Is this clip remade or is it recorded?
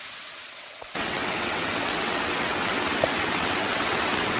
remade